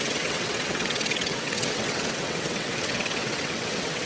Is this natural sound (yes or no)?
no